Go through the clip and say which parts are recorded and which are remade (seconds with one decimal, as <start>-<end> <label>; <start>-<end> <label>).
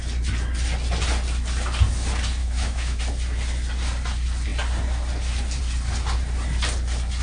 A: 0.0-2.4 recorded; 2.4-3.0 remade; 3.0-7.2 recorded